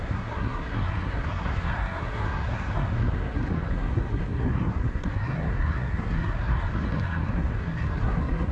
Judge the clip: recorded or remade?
remade